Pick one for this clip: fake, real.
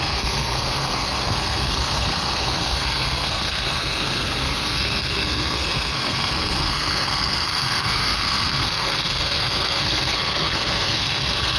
fake